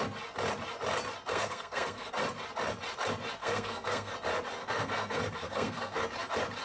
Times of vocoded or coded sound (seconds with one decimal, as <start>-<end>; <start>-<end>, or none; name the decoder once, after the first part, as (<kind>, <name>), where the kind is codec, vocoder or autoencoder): 1.3-2.1 (codec, SNAC); 3.4-4.1; 4.6-6.0